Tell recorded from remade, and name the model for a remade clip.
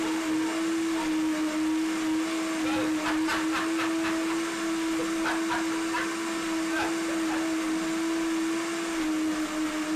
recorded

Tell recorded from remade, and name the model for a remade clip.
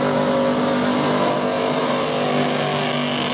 recorded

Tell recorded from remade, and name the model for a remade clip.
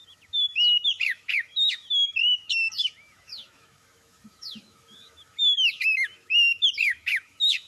remade, autoencoder, DAC-VAE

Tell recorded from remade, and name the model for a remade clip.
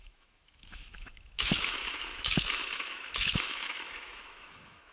remade, autoencoder, DAC-VAE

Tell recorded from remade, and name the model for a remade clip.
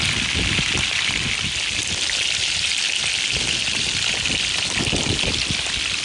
recorded